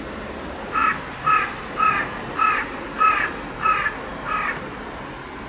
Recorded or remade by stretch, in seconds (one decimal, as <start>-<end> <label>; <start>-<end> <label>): 0.0-5.5 recorded